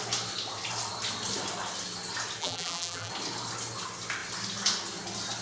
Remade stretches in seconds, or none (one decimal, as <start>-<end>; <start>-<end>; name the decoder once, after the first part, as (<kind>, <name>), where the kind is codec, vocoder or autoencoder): 2.4-3.1 (vocoder, BigVGAN v2)